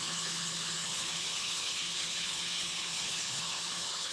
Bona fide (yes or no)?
no